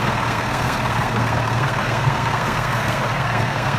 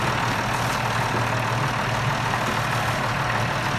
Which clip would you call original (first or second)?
second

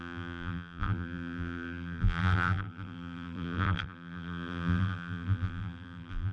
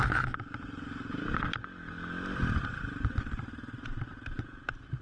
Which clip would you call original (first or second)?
second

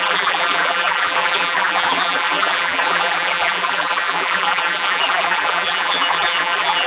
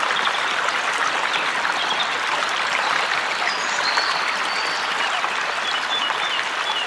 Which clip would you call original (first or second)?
second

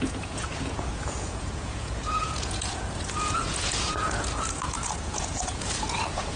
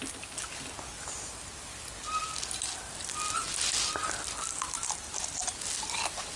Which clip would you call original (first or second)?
second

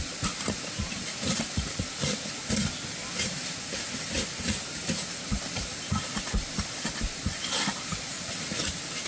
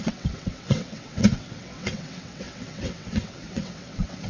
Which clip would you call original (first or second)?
first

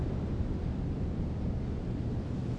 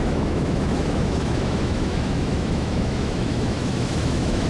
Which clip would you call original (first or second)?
first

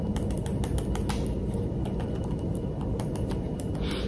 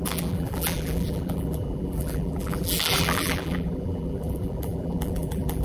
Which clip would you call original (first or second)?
first